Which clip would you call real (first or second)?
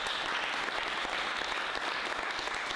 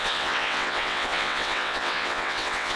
first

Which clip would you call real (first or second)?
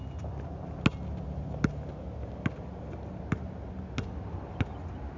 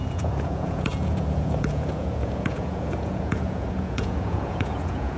first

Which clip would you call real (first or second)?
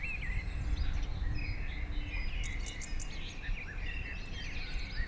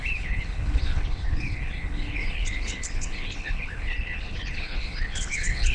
first